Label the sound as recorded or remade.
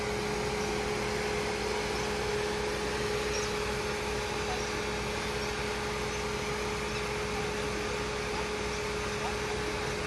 recorded